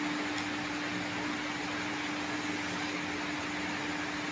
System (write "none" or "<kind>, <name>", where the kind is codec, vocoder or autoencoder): none